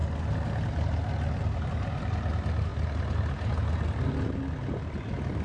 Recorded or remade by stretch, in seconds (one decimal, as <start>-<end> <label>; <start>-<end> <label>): 0.0-5.4 recorded